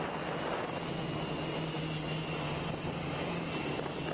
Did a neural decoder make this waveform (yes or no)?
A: no